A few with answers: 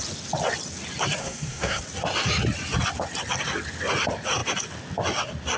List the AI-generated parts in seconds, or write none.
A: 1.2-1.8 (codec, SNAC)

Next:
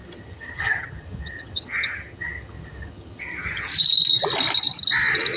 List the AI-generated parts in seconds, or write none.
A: 0.0-3.7 (vocoder, HiFi-GAN)

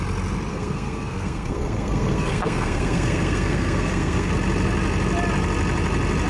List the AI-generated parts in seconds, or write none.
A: 0.5-4.3 (codec, SNAC)

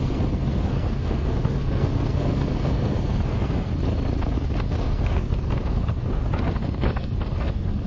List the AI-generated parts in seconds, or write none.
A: 0.0-3.7 (codec, SNAC); 4.8-7.9

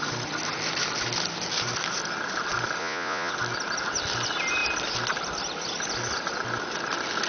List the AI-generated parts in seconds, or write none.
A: 2.8-3.3 (vocoder, Vocos)

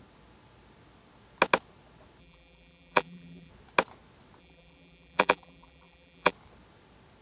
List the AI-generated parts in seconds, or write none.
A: 2.2-3.5 (vocoder, BigVGAN v2); 4.4-6.3